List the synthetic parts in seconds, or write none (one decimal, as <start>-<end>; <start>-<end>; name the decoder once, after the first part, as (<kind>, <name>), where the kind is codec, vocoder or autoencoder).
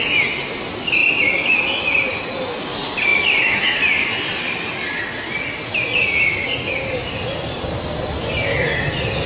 1.0-2.2 (vocoder, BigVGAN v2); 3.1-4.6; 7.0-7.6